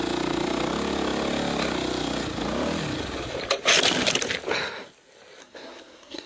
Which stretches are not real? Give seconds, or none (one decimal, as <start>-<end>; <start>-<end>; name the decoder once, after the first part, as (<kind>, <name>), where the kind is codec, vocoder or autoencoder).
5.4-6.3 (codec, SNAC)